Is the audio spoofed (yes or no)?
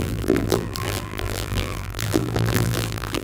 yes